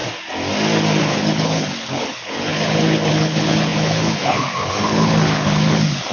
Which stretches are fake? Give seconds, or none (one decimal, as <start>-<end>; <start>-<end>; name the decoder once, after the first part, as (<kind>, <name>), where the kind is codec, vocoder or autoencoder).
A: 1.0-6.1 (codec, HILCodec)